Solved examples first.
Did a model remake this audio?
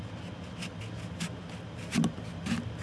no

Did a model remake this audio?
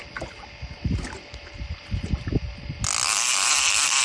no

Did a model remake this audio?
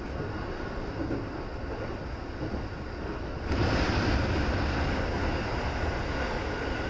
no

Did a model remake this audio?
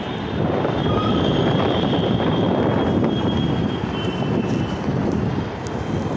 yes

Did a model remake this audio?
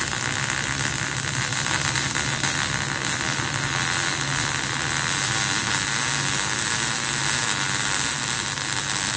no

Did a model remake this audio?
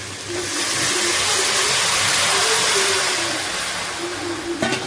no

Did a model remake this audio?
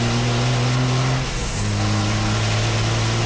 no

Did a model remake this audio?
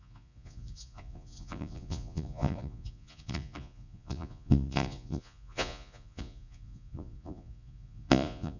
yes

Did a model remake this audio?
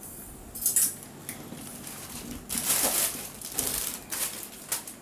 no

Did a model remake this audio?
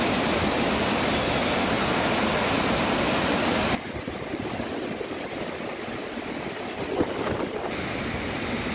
no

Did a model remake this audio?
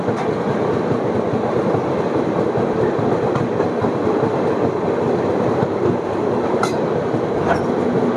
no